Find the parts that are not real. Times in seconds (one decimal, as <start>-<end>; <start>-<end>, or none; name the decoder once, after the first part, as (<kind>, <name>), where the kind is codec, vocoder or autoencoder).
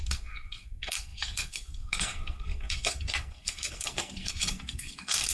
0.0-5.3 (codec, SNAC)